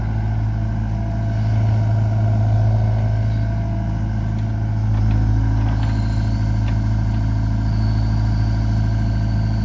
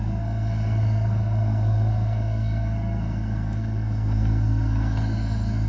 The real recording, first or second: first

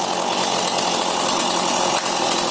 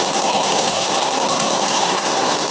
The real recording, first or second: first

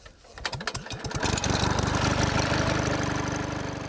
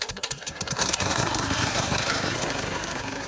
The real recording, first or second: first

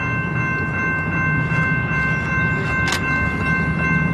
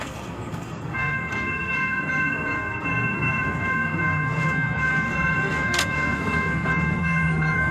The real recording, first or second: first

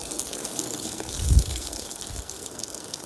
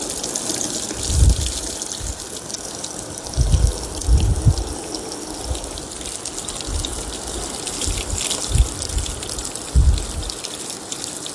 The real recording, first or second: second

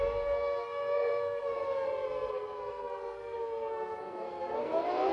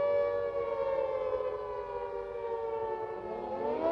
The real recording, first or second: second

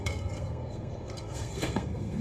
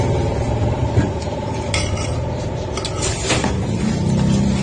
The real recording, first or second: second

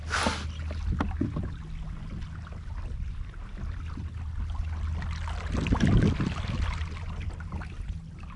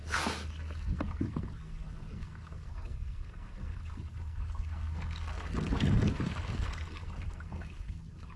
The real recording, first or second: first